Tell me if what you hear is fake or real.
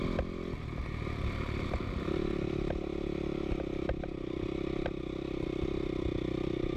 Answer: real